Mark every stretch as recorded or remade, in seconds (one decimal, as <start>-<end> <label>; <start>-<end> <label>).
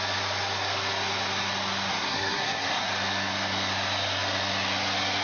0.0-1.9 recorded; 1.9-2.9 remade; 2.9-5.2 recorded